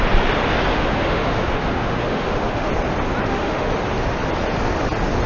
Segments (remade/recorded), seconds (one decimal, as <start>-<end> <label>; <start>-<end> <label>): 0.0-0.7 recorded; 0.7-2.7 remade; 2.7-3.2 recorded; 3.2-3.7 remade; 3.7-5.3 recorded